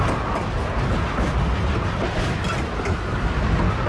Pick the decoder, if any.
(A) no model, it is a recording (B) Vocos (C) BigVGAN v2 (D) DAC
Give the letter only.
A